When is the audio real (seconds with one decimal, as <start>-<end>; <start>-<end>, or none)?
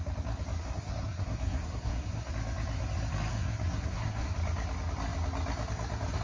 0.0-0.6; 2.3-3.3; 4.3-6.2